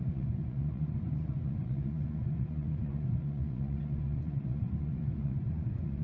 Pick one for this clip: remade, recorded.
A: remade